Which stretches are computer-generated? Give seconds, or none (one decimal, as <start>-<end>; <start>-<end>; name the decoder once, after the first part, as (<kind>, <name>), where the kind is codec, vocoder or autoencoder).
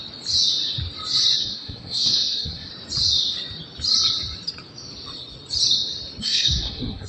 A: 1.4-2.7 (codec, SNAC); 6.2-7.1